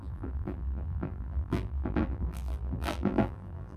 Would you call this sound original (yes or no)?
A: no